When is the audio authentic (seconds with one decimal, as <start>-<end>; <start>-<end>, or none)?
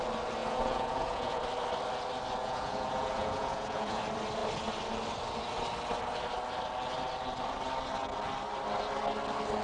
0.0-0.4; 1.4-2.4; 4.0-9.6